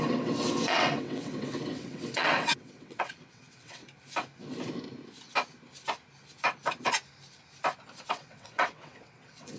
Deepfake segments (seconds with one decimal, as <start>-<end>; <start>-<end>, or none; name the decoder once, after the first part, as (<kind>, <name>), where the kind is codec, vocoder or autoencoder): 0.0-3.8 (vocoder, WaveNeXt); 8.1-9.6